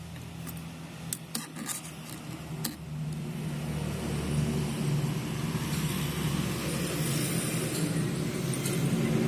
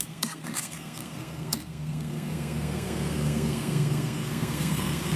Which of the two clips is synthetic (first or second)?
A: second